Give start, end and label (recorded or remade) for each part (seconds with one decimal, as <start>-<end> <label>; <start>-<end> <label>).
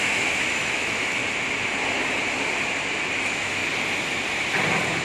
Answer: 0.0-1.2 remade; 1.2-3.2 recorded; 3.2-3.6 remade; 3.6-5.0 recorded